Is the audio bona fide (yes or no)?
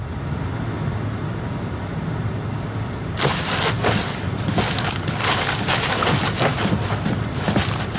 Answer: yes